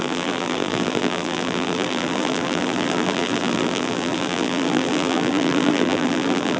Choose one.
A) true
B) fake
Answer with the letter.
B